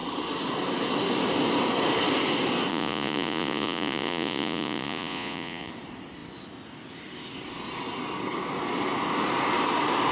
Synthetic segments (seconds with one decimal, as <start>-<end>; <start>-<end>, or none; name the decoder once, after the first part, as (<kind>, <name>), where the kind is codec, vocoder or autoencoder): 2.7-5.7 (vocoder, Vocos)